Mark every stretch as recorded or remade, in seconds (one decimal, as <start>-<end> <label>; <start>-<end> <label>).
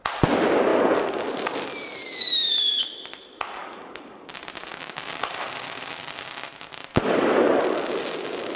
0.0-0.7 recorded; 0.7-1.3 remade; 1.3-3.6 recorded; 3.6-4.3 remade; 4.3-4.7 recorded; 4.7-5.3 remade; 5.3-6.9 recorded; 6.9-7.6 remade; 7.6-8.6 recorded